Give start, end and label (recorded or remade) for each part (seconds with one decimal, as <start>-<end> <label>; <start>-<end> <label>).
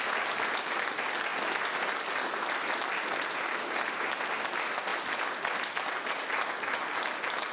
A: 0.0-7.5 recorded